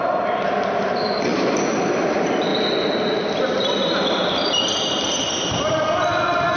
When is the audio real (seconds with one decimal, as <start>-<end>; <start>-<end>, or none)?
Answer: 1.3-2.1